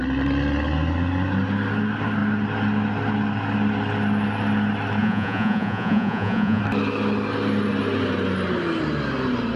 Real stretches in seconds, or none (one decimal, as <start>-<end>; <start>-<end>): 0.0-5.0; 6.6-9.6